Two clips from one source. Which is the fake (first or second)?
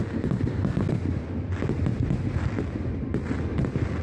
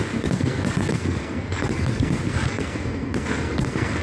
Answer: second